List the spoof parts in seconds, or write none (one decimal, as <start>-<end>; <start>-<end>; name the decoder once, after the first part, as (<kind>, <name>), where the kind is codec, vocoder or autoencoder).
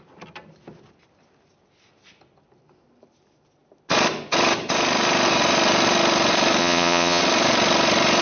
6.6-7.2 (vocoder, Vocos)